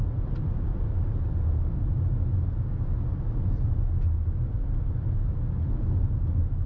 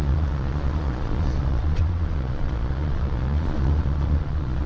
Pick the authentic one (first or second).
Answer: first